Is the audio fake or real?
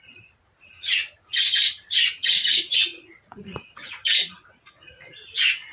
fake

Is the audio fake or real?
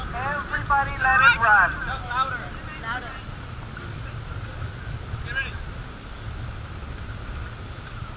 real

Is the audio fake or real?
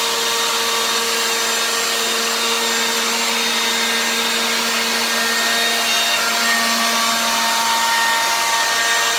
real